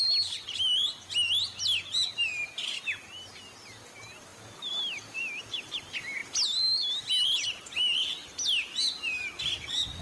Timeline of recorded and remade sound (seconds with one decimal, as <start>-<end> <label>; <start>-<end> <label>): 0.0-10.0 recorded